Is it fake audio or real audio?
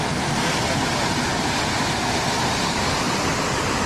real